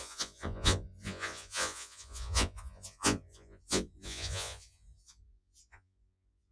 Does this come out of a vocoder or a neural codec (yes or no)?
yes